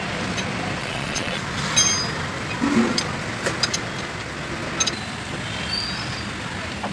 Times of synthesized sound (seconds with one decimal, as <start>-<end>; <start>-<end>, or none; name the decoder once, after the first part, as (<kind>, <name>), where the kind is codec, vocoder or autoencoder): 0.8-1.4 (vocoder, Vocos)